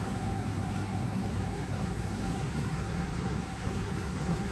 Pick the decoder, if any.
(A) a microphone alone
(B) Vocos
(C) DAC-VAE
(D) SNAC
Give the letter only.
D